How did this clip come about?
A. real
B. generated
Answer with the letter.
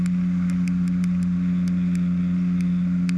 A